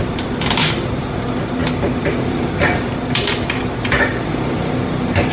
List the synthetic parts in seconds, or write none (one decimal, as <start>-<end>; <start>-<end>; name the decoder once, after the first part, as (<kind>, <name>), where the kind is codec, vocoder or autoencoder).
none